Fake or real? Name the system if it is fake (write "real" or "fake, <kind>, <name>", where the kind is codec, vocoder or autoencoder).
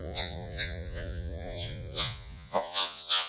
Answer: fake, vocoder, Vocos